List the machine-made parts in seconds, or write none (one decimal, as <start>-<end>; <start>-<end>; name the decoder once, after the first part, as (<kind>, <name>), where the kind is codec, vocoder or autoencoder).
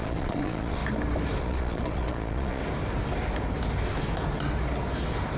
0.0-0.8 (vocoder, Vocos); 1.4-2.6